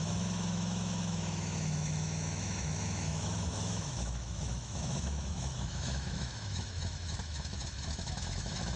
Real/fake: fake